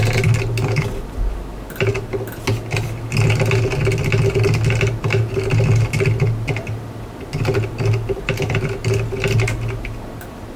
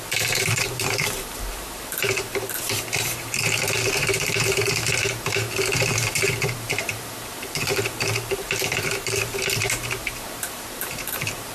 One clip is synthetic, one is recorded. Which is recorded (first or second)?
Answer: first